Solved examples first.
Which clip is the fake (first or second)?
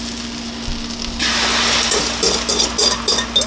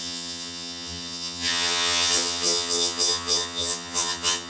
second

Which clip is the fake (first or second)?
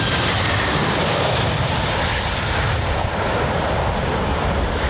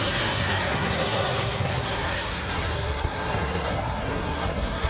second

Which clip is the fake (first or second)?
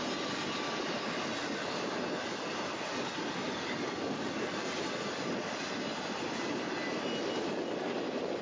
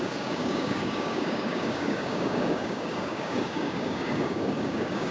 second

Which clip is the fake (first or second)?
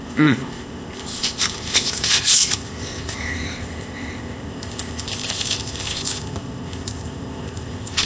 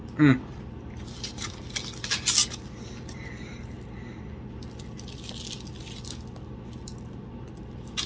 first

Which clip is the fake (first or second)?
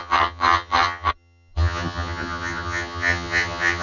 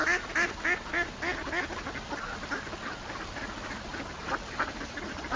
first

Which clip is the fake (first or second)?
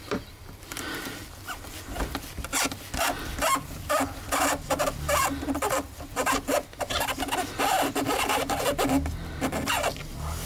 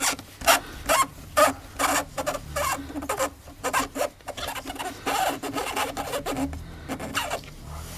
first